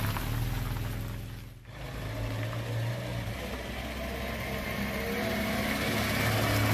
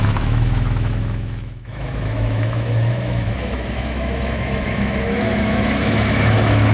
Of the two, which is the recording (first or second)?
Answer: first